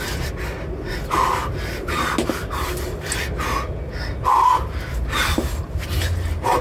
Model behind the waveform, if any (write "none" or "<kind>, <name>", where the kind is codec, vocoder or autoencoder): none